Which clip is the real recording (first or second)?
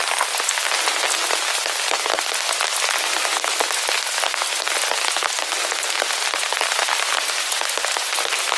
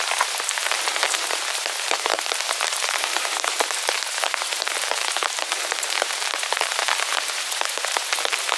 first